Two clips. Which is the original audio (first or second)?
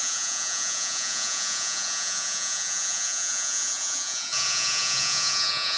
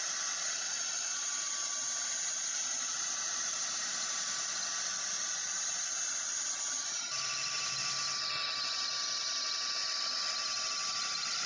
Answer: second